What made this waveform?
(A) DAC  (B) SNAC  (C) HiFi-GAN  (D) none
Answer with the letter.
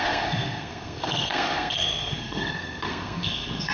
B